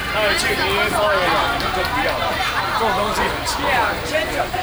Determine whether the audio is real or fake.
real